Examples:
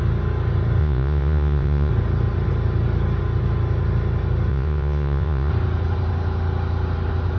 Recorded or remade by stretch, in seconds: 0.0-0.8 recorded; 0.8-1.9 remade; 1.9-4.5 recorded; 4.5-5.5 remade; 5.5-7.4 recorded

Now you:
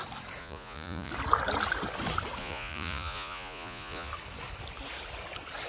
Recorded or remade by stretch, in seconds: 0.0-0.4 recorded; 0.4-1.1 remade; 1.1-2.4 recorded; 2.4-4.1 remade; 4.1-5.7 recorded

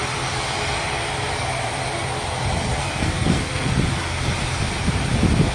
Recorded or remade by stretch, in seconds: 0.0-2.8 recorded; 2.8-3.7 remade; 3.7-5.5 recorded

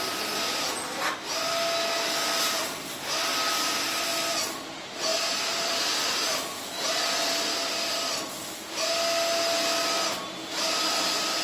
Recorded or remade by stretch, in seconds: 0.0-11.4 recorded